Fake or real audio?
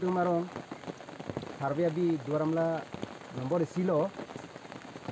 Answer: real